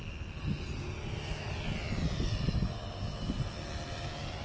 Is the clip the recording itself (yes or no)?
yes